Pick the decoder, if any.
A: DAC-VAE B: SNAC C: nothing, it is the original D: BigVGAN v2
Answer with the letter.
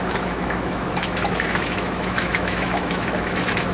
A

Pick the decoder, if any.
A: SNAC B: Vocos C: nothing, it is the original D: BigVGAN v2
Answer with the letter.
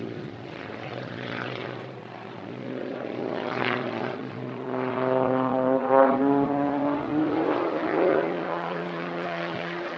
B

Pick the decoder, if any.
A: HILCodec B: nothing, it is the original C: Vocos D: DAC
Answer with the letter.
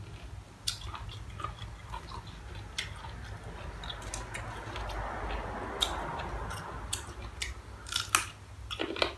B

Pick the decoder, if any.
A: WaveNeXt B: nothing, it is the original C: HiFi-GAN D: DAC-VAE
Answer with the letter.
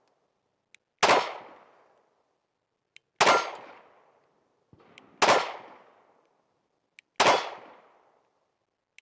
B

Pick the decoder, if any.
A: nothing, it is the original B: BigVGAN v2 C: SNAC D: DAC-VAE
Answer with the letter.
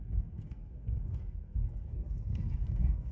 C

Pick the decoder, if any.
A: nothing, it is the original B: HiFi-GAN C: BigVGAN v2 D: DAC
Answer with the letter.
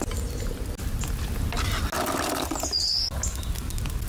A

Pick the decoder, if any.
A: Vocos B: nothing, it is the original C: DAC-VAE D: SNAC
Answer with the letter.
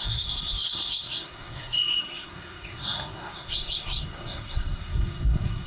D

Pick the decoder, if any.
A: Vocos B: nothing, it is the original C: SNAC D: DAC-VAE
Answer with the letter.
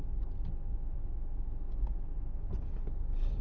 B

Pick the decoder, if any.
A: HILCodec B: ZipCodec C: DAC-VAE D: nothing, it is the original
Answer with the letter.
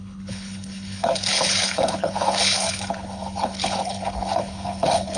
A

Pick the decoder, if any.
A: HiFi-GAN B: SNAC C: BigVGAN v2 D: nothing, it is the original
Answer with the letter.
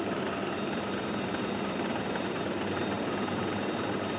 C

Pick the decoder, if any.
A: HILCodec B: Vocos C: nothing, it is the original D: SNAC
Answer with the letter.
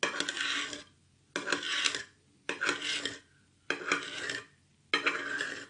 C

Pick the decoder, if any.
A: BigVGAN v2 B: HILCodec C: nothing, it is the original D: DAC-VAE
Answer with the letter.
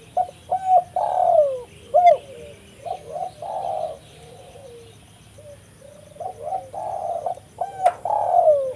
C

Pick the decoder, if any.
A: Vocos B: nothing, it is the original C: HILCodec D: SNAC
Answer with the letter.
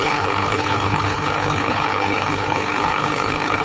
C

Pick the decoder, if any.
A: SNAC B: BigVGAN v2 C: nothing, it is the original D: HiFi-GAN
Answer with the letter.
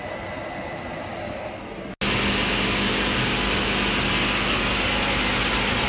C